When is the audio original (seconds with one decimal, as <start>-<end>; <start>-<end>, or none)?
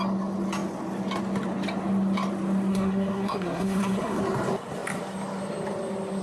0.0-2.7; 4.2-6.2